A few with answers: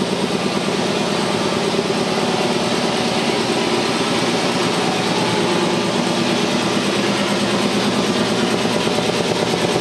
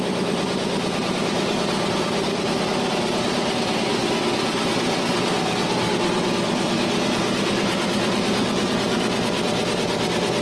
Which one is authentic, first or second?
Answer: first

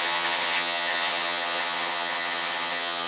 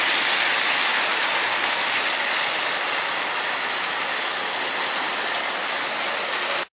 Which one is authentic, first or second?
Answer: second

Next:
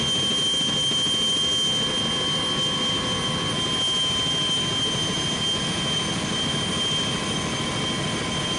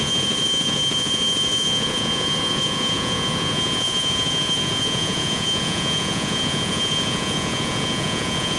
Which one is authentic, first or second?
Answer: first